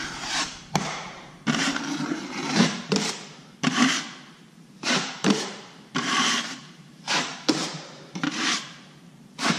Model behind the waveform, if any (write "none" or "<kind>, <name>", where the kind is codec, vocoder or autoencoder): vocoder, BigVGAN v2